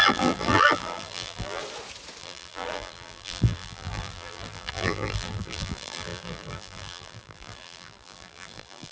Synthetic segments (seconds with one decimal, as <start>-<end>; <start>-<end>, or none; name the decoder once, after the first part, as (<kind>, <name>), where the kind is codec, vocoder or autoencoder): 0.0-1.6 (vocoder, BigVGAN v2); 2.2-8.9